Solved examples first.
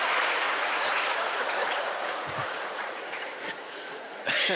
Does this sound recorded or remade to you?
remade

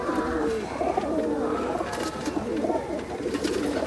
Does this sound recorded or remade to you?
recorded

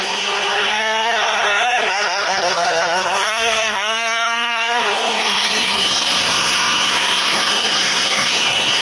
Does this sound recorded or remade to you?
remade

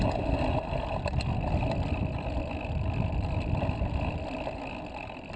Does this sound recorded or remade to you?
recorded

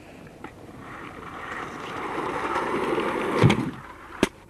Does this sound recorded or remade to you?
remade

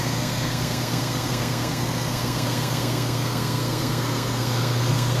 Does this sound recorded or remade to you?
remade